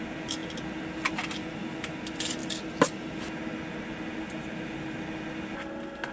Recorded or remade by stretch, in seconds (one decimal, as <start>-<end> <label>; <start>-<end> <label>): 0.0-6.1 recorded